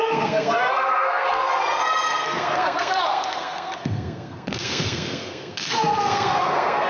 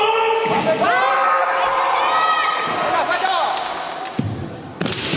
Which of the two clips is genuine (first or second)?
second